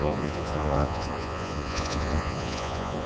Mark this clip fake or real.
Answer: fake